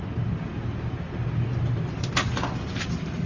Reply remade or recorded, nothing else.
recorded